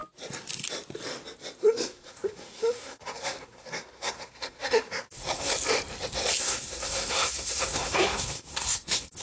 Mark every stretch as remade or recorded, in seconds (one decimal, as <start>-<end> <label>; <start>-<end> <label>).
0.0-1.6 recorded; 1.6-5.5 remade; 5.5-6.4 recorded; 6.4-9.2 remade